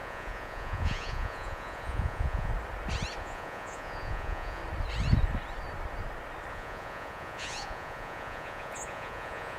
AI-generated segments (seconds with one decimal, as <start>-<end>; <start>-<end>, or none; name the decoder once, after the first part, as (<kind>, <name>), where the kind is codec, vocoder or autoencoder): 0.0-2.5 (vocoder, Vocos); 3.2-4.6; 6.5-9.6